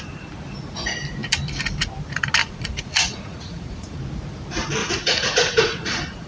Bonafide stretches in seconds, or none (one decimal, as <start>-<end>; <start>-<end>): 0.0-2.4; 4.0-4.8